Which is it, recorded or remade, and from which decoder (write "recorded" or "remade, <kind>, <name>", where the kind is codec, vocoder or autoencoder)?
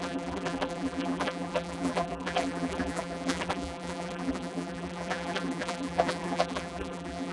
remade, vocoder, BigVGAN v2